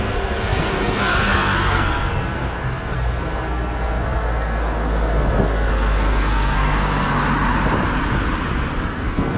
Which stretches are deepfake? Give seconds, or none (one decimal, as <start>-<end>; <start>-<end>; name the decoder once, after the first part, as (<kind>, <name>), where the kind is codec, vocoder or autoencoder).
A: 0.0-7.2 (codec, SNAC); 8.8-9.4